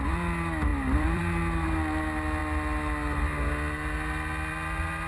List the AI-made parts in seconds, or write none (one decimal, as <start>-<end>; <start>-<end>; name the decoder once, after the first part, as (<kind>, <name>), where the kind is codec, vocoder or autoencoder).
0.7-1.2 (vocoder, BigVGAN v2)